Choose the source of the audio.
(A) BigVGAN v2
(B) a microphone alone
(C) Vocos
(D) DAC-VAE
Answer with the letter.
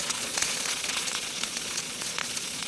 C